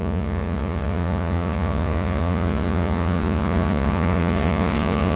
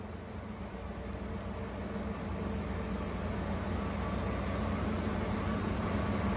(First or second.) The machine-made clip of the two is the first